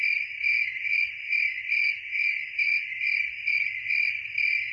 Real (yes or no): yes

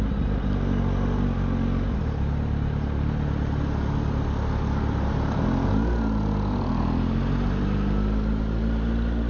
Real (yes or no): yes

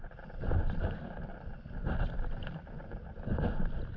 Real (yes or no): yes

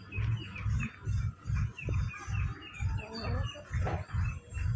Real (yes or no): yes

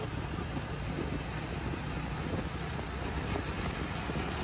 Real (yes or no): yes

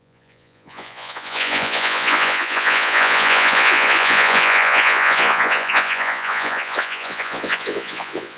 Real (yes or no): no